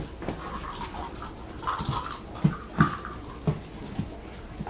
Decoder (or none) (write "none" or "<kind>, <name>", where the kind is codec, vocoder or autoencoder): none